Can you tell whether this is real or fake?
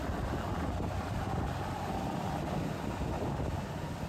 real